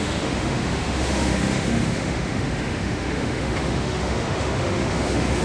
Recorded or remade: remade